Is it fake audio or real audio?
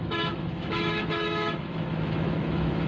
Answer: fake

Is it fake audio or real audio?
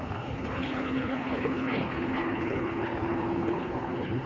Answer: fake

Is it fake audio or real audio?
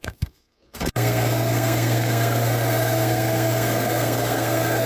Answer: fake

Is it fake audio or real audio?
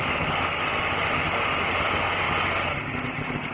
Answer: real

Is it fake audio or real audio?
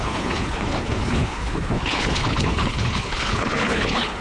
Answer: fake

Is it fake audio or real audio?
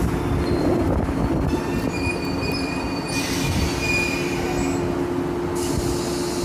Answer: real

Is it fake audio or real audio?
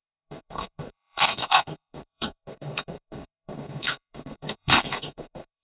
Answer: fake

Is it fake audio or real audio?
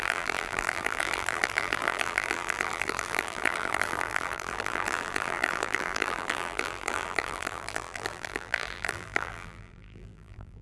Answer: fake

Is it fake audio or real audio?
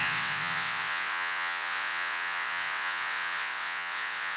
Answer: fake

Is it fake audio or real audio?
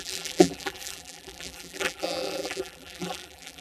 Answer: fake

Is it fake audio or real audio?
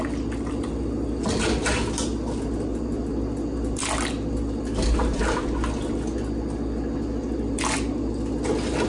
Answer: real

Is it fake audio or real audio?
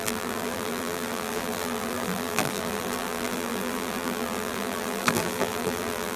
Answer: fake